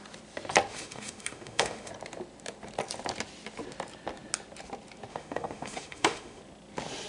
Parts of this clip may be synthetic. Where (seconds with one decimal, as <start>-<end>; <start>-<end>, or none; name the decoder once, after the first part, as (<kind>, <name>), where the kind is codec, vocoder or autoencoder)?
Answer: 0.7-1.9 (autoencoder, DAC-VAE); 5.1-6.4